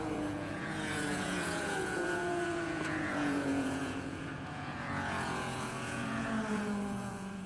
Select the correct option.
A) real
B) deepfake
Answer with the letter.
B